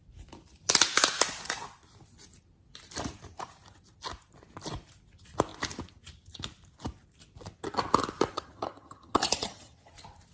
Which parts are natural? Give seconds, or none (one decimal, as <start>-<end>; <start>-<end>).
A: 0.0-8.3; 9.9-10.3